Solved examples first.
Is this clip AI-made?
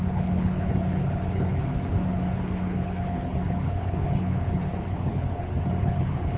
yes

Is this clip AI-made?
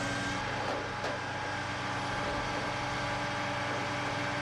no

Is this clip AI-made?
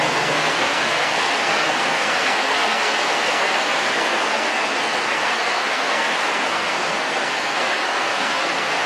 yes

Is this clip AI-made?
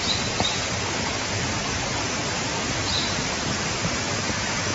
yes